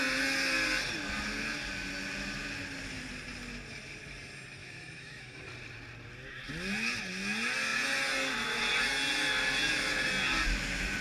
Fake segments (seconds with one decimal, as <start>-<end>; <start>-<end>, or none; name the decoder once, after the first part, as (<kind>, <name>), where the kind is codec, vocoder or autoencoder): 4.6-5.4 (autoencoder, DAC-VAE)